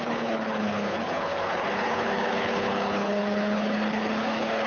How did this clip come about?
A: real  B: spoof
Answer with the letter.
B